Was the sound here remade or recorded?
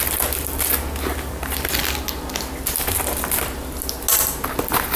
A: recorded